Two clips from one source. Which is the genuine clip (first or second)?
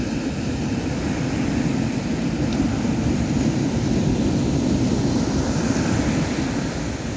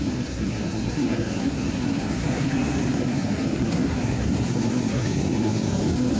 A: first